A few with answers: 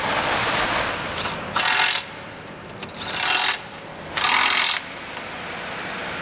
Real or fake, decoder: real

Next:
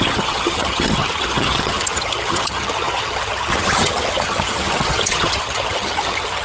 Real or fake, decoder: fake, vocoder, HiFi-GAN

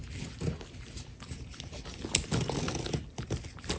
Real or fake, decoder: real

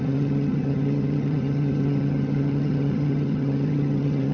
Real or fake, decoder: fake, vocoder, HiFi-GAN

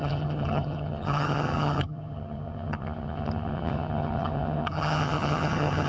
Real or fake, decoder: fake, vocoder, HiFi-GAN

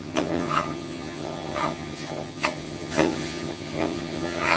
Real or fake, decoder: fake, vocoder, HiFi-GAN